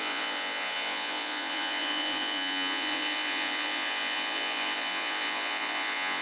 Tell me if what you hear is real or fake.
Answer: fake